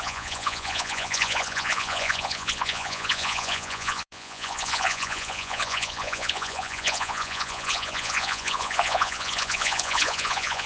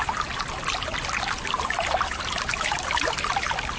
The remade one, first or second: first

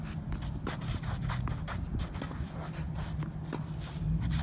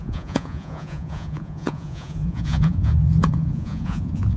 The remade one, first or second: second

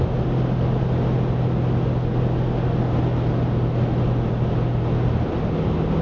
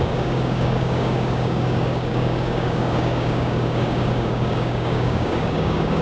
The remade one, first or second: second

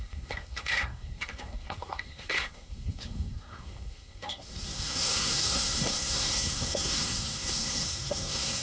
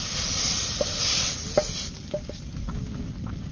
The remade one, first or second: first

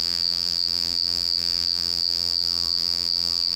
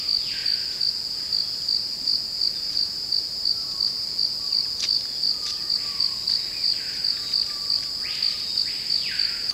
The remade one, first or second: first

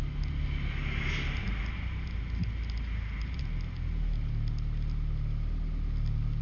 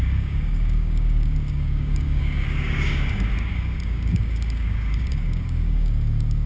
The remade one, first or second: second